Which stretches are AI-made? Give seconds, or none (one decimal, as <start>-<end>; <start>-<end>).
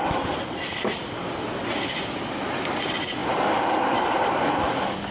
none